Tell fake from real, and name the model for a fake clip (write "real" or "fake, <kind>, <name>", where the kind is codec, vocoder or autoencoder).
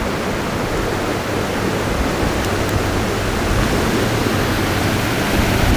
real